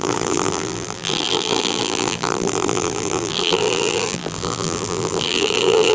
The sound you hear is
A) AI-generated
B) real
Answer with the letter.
A